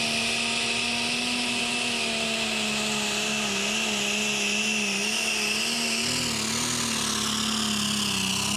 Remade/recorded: recorded